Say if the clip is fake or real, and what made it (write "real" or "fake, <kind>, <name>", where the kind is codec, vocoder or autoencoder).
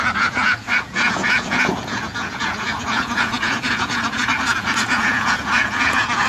fake, vocoder, Vocos